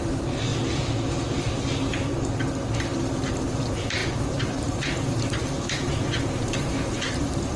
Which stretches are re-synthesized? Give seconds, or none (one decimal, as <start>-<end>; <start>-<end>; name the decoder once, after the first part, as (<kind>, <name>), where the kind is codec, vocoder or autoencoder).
0.0-0.5 (vocoder, BigVGAN v2); 3.5-7.6